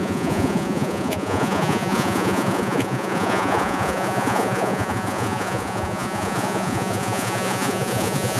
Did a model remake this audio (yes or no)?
yes